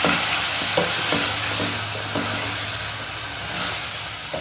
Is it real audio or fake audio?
real